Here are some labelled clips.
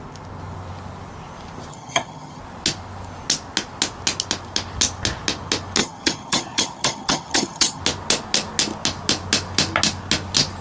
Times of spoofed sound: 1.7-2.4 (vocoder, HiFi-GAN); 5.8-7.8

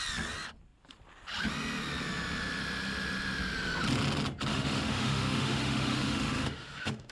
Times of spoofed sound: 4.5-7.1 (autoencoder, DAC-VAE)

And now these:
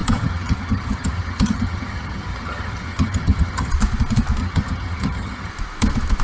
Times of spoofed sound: 0.0-3.7 (vocoder, HiFi-GAN); 4.4-5.5